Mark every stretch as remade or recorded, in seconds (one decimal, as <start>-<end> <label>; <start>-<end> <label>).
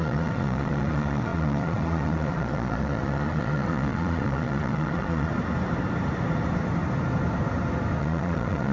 0.0-5.3 remade; 5.3-8.0 recorded; 8.0-8.7 remade